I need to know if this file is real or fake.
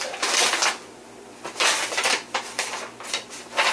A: real